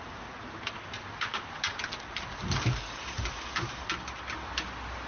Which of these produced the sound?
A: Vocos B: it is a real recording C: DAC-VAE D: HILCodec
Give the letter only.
B